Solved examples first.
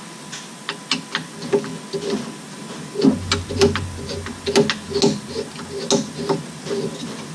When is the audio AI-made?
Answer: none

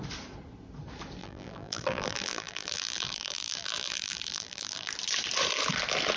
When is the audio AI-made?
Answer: 1.2-4.9 (vocoder, BigVGAN v2)

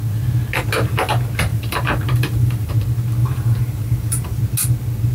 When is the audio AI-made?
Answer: 1.5-2.7 (vocoder, BigVGAN v2); 3.2-4.4